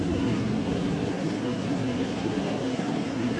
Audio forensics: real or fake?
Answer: fake